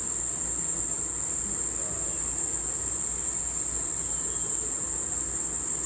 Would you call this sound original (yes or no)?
yes